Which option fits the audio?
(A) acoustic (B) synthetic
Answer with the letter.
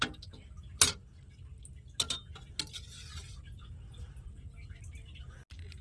A